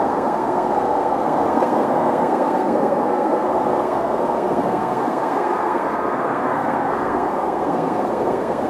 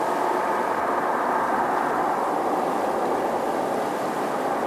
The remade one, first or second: first